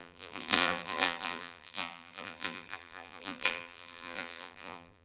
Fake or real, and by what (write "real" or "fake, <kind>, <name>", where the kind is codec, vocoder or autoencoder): fake, vocoder, BigVGAN v2